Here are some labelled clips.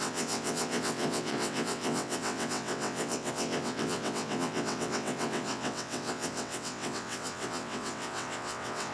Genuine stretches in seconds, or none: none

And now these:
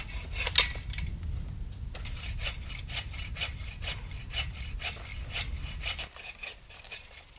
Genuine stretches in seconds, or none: 0.0-7.4

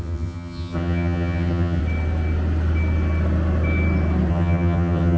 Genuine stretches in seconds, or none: 1.8-4.3

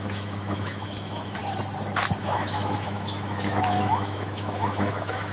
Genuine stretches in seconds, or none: 1.4-2.2

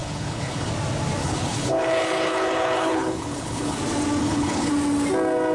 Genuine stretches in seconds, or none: 0.7-1.2; 3.8-4.2; 4.7-5.5

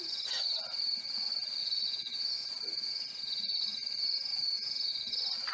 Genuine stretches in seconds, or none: 0.0-1.6; 2.3-4.3; 4.9-5.5

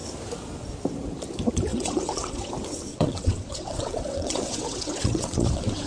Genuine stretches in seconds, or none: 0.0-1.7; 2.5-2.9